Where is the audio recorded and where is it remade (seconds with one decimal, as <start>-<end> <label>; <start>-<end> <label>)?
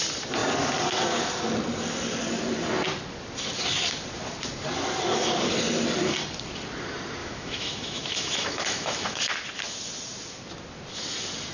0.0-7.2 recorded; 7.2-9.2 remade; 9.2-11.5 recorded